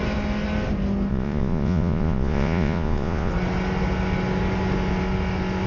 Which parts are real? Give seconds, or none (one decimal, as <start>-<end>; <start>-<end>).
0.0-1.1; 3.3-5.7